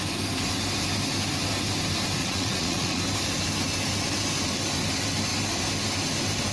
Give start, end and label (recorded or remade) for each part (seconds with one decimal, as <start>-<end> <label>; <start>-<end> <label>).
0.0-2.2 recorded; 2.2-3.0 remade; 3.0-6.5 recorded